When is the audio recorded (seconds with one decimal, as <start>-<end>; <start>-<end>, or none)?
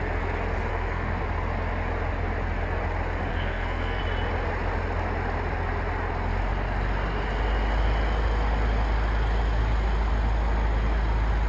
0.0-0.7; 1.2-3.3; 4.0-11.5